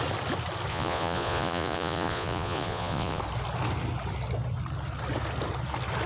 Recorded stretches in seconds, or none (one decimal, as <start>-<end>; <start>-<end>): 0.0-0.7; 3.2-6.1

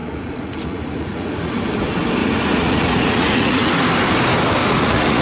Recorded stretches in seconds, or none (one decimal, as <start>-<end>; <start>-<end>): 1.6-2.2; 3.7-4.6

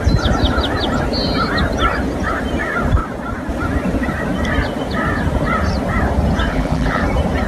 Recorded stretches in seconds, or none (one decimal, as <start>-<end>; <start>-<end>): 0.0-6.5; 7.0-7.5

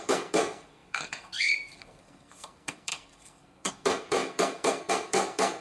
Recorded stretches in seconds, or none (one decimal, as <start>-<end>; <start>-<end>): none

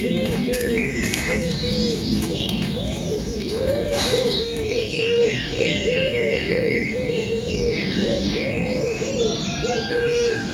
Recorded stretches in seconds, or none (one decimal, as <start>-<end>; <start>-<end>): 9.1-9.9

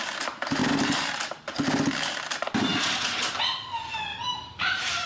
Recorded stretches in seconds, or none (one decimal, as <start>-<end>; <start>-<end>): 0.0-0.6; 1.4-2.7; 3.4-4.1

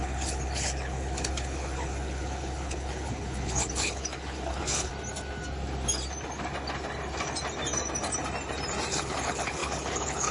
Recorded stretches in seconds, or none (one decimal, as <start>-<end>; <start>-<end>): 4.9-8.9

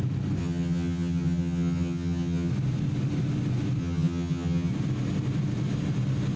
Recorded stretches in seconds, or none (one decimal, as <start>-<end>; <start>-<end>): 0.0-0.4; 2.5-3.8; 4.7-6.4